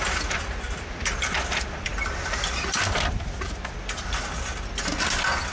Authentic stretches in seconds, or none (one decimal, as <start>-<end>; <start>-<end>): 0.0-5.5